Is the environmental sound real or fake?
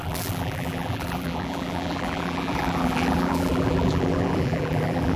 fake